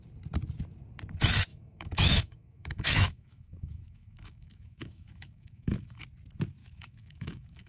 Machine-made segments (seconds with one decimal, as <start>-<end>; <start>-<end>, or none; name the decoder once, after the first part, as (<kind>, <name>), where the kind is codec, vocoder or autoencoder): 1.5-6.0 (autoencoder, DAC-VAE); 6.6-7.7